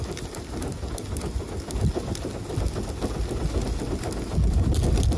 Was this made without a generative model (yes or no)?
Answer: yes